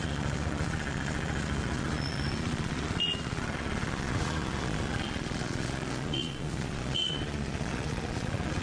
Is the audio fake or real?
fake